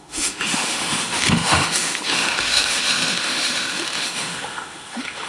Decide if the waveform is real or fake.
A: fake